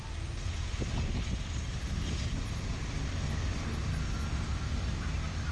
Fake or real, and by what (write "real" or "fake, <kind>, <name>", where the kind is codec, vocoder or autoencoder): real